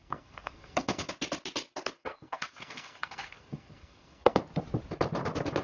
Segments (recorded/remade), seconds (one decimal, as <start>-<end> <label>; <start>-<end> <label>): 0.0-1.1 remade; 1.1-2.0 recorded; 2.0-4.4 remade; 4.4-5.6 recorded

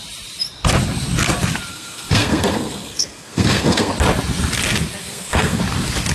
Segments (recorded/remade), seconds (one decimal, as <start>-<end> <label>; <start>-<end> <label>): 0.0-1.7 recorded; 1.7-3.9 remade; 3.9-5.0 recorded; 5.0-5.6 remade; 5.6-6.1 recorded

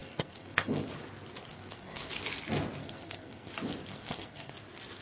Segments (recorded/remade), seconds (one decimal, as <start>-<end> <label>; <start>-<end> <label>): 0.0-0.9 remade; 0.9-1.5 recorded; 1.5-2.1 remade; 2.1-2.8 recorded; 2.8-3.5 remade; 3.5-3.9 recorded; 3.9-4.5 remade; 4.5-5.0 recorded

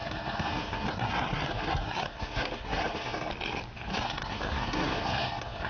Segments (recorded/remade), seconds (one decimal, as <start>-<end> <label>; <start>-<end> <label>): 0.0-3.3 remade; 3.3-3.9 recorded; 3.9-5.7 remade

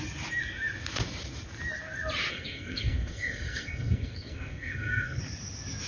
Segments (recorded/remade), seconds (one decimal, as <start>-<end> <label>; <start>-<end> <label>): 0.0-2.3 recorded; 2.3-5.2 remade; 5.2-5.9 recorded

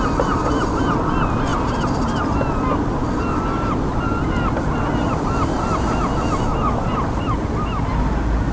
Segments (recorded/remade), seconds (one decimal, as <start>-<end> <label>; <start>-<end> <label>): 0.0-8.5 recorded

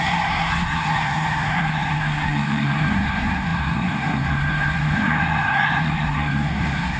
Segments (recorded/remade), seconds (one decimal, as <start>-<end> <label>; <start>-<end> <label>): 0.0-7.0 remade

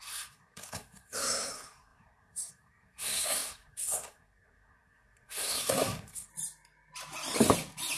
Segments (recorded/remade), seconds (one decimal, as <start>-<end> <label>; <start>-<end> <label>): 0.0-6.3 remade; 6.3-8.0 recorded